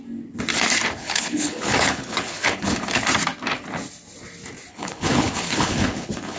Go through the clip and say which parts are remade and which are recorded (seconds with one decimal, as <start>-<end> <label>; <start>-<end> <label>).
0.0-1.0 recorded; 1.0-3.0 remade; 3.0-4.7 recorded; 4.7-6.4 remade